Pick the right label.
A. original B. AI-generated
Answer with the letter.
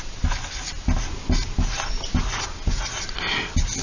A